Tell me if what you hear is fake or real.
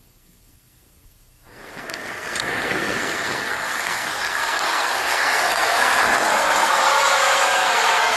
fake